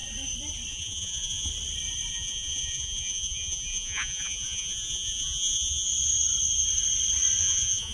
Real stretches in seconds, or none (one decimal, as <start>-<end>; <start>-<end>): 0.0-0.7; 1.5-2.1; 5.9-7.4